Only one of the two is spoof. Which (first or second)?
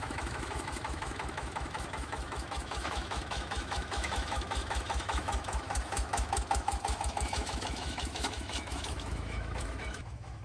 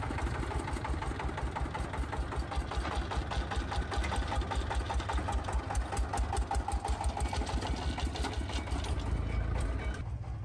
first